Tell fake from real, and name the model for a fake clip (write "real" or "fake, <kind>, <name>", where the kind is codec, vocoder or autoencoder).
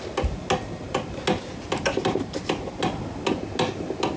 real